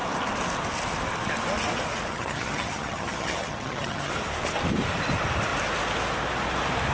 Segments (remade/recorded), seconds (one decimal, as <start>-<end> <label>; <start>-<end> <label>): 0.0-2.1 recorded; 2.1-4.1 remade; 4.1-6.9 recorded